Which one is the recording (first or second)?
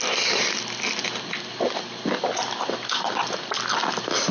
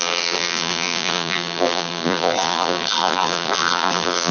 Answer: first